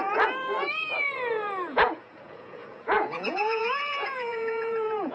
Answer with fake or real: fake